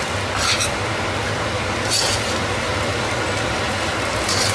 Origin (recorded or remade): recorded